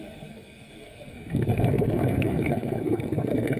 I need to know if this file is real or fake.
fake